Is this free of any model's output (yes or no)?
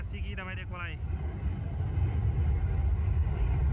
yes